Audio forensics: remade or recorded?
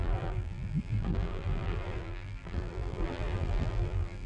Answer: remade